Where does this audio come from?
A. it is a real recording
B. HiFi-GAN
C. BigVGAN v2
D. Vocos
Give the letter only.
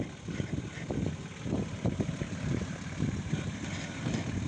C